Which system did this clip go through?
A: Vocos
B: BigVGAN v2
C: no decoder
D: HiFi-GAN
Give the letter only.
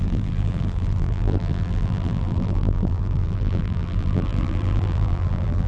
B